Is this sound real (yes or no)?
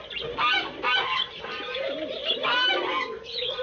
yes